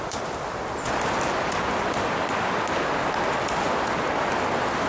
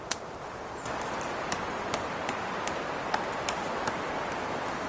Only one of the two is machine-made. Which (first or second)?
second